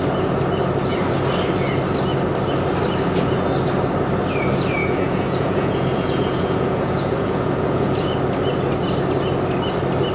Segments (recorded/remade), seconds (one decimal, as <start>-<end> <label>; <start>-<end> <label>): 0.0-4.8 recorded; 4.8-8.2 remade; 8.2-10.1 recorded